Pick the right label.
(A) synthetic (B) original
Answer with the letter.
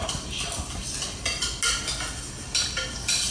B